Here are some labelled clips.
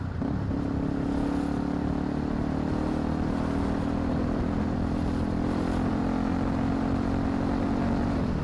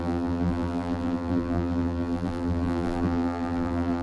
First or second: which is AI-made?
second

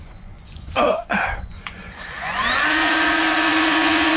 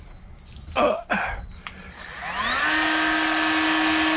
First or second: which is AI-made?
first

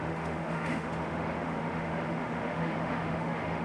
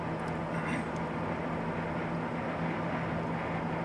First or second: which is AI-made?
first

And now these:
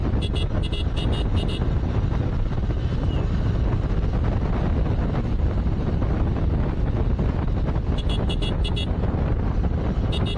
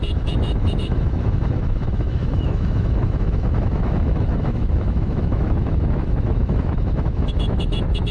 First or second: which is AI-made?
second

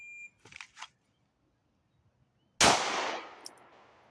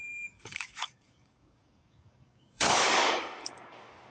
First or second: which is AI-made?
second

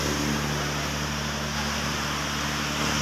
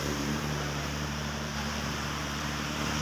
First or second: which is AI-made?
second